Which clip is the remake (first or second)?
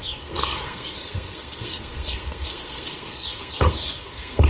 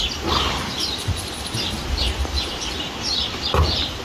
first